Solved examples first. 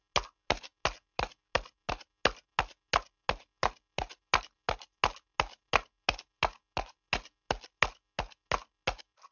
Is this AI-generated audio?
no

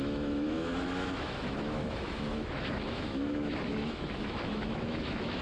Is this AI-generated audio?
yes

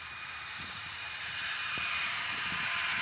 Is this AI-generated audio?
no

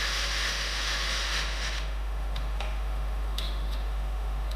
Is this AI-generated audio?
yes